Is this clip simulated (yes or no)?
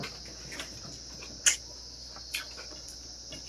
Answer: no